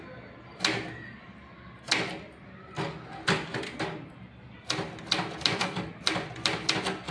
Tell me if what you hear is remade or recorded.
recorded